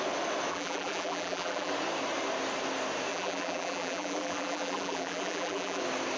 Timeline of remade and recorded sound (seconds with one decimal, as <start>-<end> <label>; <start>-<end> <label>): 0.0-0.5 recorded; 0.5-1.7 remade; 1.7-3.1 recorded; 3.1-5.8 remade; 5.8-6.2 recorded